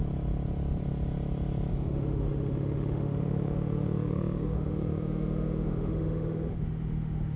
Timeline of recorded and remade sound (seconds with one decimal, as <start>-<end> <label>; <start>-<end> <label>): 0.0-1.7 recorded; 1.7-7.4 remade